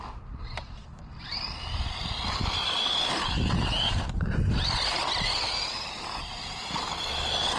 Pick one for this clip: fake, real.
real